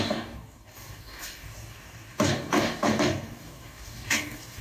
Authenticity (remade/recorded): remade